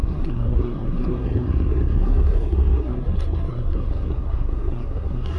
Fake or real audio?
fake